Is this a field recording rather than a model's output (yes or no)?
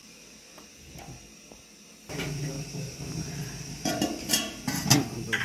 yes